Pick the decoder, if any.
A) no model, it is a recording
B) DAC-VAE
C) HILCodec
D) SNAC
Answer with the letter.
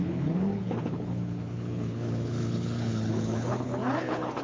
C